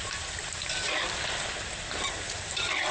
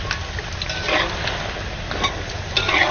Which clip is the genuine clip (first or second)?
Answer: second